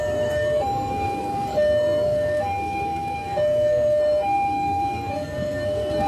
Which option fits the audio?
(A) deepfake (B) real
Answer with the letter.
A